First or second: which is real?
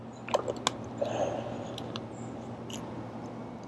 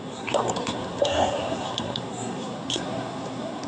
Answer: first